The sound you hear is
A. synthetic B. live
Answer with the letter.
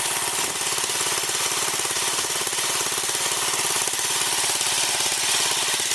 B